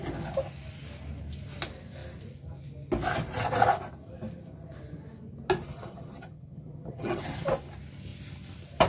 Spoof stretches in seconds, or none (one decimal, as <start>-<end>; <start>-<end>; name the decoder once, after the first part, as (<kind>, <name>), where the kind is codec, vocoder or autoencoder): 5.7-7.2 (vocoder, HiFi-GAN)